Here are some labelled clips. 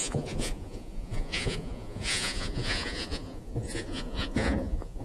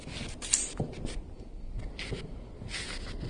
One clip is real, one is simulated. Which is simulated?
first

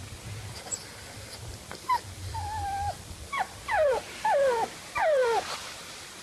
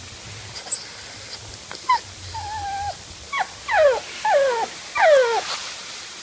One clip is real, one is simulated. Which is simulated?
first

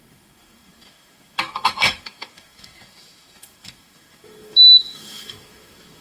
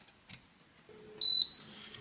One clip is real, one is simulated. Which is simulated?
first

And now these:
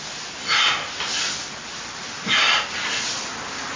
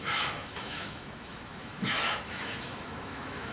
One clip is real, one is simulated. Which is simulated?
second